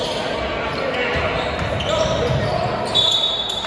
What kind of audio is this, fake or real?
real